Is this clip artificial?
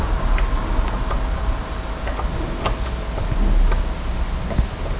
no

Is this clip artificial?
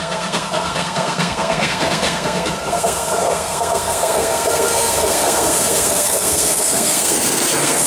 yes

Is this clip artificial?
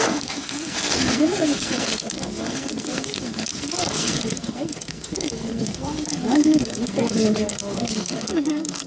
yes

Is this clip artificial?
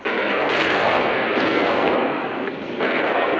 yes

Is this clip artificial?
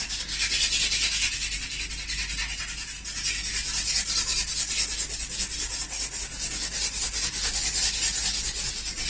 no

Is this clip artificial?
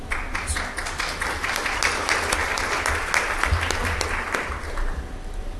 no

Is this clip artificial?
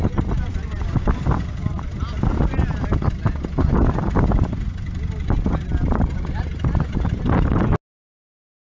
no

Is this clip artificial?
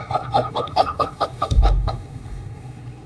yes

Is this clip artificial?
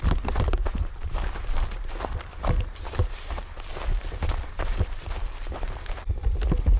no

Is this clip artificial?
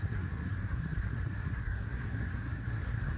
yes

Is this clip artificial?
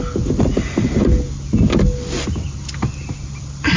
no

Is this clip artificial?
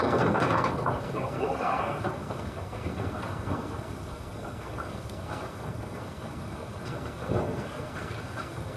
yes